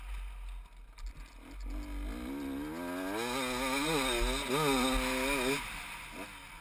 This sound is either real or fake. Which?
real